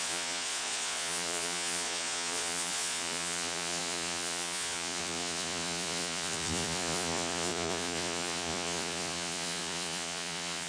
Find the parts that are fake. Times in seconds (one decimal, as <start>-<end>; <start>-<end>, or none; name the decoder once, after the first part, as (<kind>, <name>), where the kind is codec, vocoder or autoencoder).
0.0-10.7 (vocoder, Vocos)